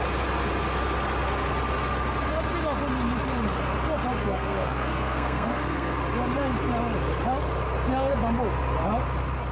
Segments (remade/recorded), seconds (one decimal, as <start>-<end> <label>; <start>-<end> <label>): 0.0-4.2 recorded; 4.2-6.0 remade; 6.0-9.5 recorded